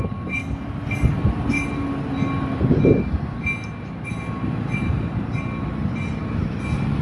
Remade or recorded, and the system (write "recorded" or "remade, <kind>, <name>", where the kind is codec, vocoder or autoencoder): recorded